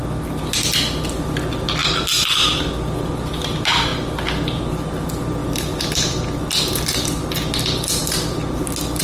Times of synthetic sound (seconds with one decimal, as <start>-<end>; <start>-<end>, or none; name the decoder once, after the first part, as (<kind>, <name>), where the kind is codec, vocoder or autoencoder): 1.8-2.5 (vocoder, BigVGAN v2); 5.4-7.3